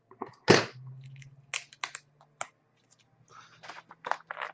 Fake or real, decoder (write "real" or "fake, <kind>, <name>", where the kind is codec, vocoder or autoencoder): real